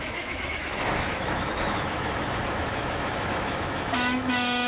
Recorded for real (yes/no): no